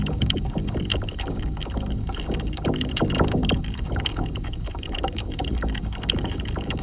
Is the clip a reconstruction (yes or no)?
yes